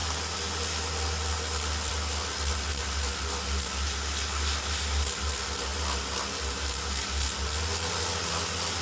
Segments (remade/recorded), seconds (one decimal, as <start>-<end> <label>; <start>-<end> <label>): 0.0-8.8 recorded